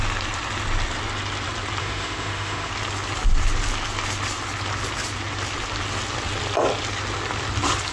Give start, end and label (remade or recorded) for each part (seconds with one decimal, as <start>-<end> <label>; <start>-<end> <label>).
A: 0.0-1.8 recorded; 1.8-2.7 remade; 2.7-7.9 recorded